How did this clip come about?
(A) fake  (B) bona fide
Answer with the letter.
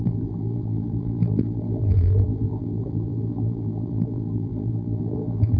A